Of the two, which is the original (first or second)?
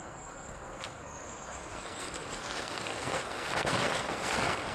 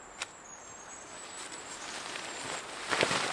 second